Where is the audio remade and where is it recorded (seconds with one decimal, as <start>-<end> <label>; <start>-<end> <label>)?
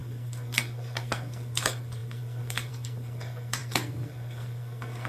0.0-5.1 remade